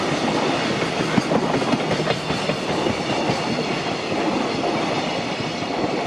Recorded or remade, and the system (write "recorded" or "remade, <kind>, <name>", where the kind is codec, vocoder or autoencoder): recorded